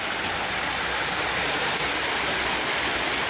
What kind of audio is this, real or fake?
real